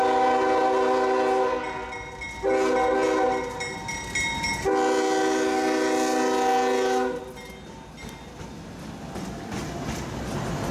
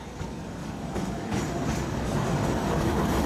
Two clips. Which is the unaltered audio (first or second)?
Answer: first